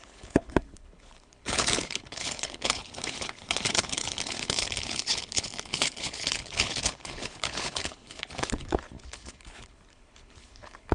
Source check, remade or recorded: remade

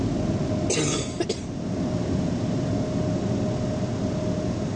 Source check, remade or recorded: recorded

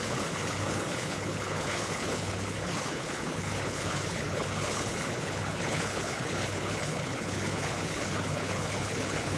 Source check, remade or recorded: remade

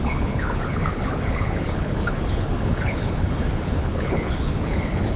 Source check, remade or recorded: remade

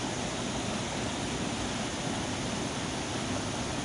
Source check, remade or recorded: recorded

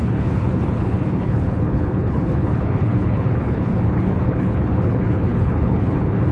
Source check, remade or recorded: remade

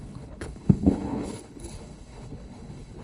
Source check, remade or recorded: remade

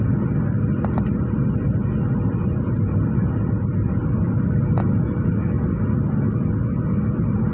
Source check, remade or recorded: recorded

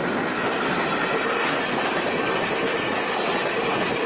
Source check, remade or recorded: recorded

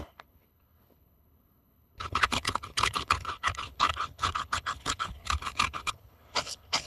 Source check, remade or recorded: remade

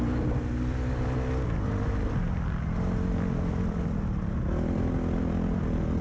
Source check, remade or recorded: recorded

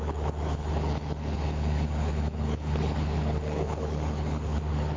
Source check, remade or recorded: remade